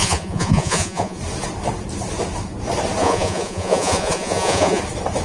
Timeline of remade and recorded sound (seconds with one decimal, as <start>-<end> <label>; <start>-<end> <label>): 0.0-1.2 remade; 1.2-3.0 recorded; 3.0-4.8 remade; 4.8-5.2 recorded